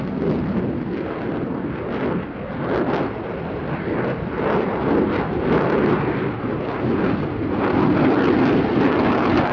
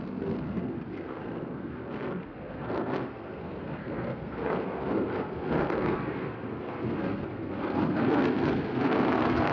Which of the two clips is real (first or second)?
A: first